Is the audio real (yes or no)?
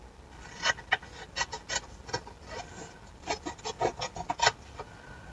yes